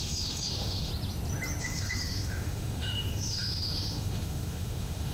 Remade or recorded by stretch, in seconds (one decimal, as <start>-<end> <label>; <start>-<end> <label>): 0.0-0.9 remade; 0.9-1.6 recorded; 1.6-5.1 remade